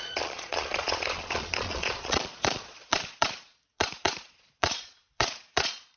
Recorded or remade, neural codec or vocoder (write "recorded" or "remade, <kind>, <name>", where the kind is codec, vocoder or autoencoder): remade, vocoder, Vocos